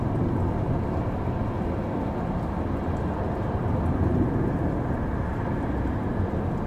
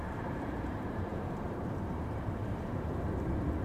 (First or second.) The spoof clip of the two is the second